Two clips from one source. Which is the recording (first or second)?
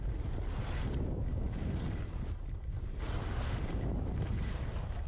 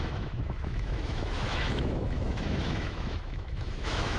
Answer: first